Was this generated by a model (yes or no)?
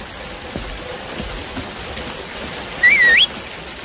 no